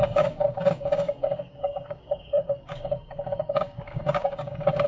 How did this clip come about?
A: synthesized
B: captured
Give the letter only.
A